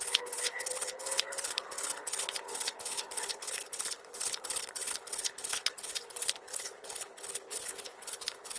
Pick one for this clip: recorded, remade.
remade